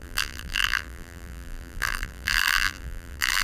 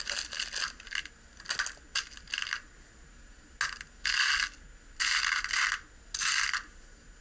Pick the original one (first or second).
second